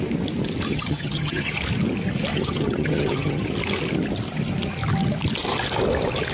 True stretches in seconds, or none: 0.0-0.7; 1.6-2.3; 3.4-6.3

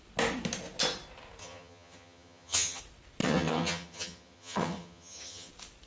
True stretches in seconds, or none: 0.0-1.4; 2.8-3.2; 5.5-5.9

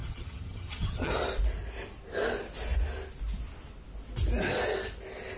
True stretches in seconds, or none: 1.1-5.4